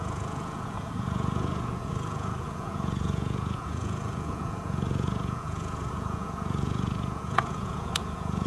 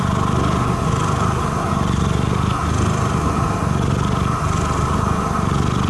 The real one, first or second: second